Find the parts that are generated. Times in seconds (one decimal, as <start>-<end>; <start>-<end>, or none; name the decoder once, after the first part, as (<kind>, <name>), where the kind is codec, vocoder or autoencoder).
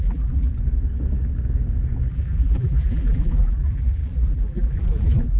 0.0-0.5 (vocoder, BigVGAN v2); 2.1-5.4